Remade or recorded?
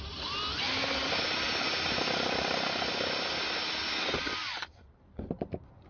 recorded